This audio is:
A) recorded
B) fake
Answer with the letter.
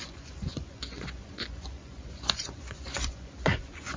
B